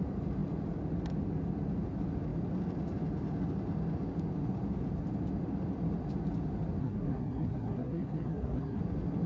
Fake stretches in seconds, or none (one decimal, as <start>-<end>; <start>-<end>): 6.8-8.8